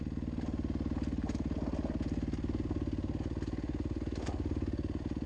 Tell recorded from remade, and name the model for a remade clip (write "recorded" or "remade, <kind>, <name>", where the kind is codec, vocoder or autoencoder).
recorded